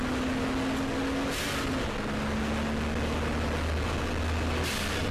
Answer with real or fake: real